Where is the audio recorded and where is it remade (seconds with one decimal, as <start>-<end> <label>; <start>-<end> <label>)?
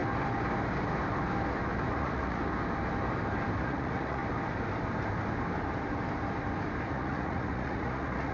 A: 0.0-1.9 recorded; 1.9-2.4 remade; 2.4-3.6 recorded; 3.6-4.2 remade; 4.2-6.9 recorded; 6.9-8.3 remade